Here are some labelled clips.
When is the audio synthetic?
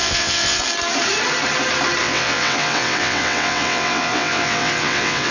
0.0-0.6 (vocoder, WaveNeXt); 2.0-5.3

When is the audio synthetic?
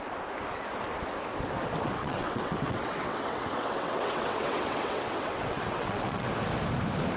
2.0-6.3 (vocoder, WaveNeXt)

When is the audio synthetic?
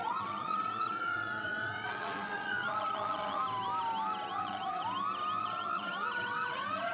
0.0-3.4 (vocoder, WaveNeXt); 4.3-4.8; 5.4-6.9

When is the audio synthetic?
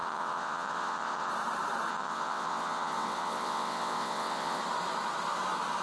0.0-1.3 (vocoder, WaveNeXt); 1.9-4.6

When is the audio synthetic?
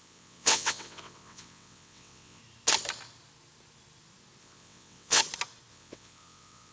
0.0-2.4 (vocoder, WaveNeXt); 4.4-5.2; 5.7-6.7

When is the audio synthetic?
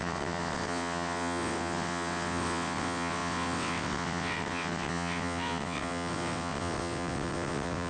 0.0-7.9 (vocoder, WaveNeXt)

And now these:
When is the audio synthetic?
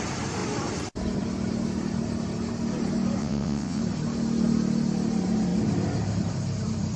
3.2-3.8 (vocoder, WaveNeXt)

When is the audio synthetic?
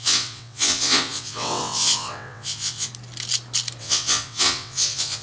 0.0-2.9 (vocoder, WaveNeXt); 3.8-5.2